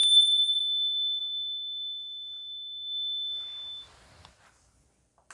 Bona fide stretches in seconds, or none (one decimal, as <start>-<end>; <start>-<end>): 0.6-5.3